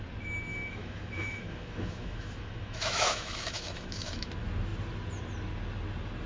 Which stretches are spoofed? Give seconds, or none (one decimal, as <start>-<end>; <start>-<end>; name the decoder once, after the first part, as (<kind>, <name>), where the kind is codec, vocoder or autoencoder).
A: 0.5-4.3 (autoencoder, DAC-VAE)